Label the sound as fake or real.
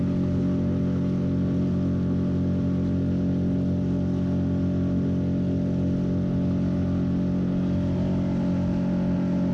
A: real